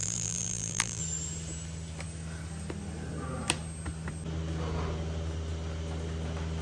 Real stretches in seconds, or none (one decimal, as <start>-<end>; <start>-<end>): 1.0-6.6